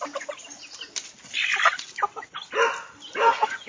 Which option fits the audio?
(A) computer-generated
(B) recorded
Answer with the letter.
B